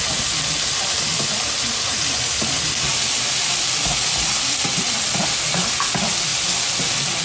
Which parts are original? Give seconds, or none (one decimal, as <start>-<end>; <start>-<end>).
0.0-7.2